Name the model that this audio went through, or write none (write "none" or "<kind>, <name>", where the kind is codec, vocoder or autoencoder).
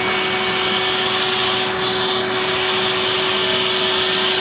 none